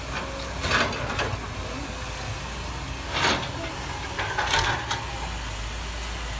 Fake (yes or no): no